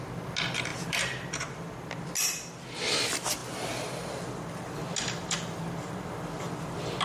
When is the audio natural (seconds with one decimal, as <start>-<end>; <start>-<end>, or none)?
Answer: 0.0-0.7; 1.6-7.0